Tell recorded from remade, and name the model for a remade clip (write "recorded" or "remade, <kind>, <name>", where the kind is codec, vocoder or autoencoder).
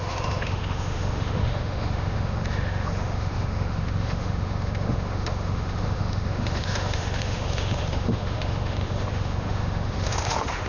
remade, autoencoder, DAC-VAE